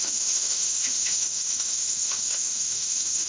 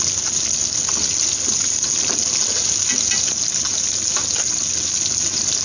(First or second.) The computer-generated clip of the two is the first